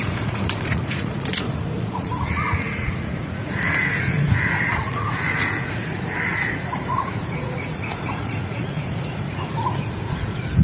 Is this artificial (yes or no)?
yes